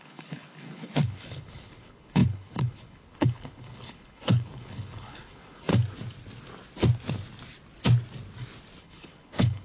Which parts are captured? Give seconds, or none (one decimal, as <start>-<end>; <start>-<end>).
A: 5.7-8.8